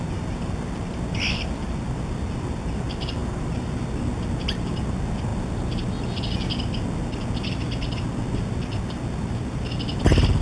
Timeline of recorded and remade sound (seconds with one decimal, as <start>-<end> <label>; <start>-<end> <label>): 0.0-10.4 recorded